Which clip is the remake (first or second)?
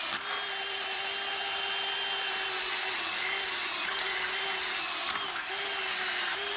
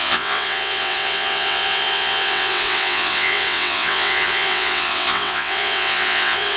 second